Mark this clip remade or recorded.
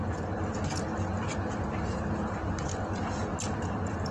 recorded